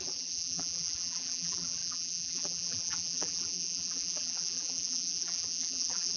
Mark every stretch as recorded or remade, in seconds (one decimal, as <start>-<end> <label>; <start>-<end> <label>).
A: 0.0-6.2 remade